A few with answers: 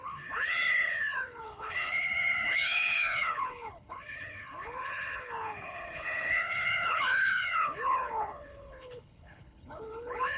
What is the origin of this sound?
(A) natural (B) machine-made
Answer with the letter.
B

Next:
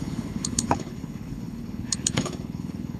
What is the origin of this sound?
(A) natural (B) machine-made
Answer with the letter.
B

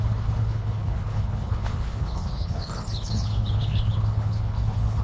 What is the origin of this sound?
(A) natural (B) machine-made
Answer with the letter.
B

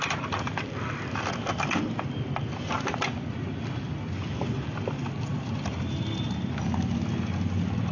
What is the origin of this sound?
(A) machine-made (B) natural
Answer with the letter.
B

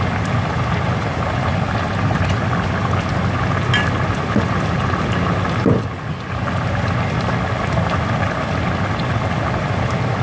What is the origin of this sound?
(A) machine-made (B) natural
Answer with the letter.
B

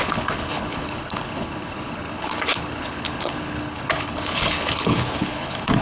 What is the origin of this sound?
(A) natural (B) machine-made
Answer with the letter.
B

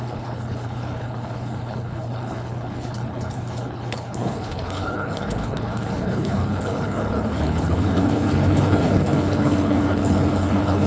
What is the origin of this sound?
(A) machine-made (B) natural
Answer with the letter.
A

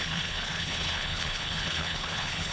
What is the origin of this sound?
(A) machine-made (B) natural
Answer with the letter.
A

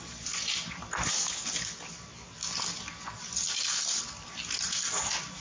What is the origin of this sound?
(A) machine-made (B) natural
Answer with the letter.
B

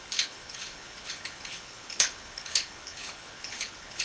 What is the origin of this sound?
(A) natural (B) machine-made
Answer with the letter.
B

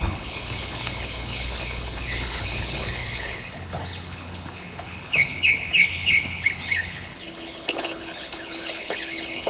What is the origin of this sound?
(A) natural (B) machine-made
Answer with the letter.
B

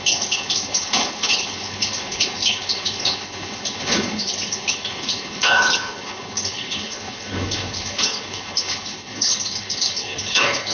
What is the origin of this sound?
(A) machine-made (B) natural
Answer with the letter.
A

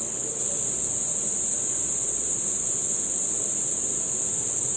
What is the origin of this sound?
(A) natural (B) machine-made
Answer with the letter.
A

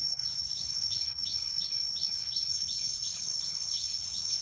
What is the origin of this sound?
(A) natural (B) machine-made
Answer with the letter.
B